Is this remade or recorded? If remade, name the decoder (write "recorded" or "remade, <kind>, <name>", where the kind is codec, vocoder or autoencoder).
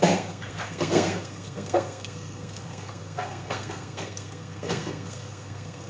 remade, codec, SNAC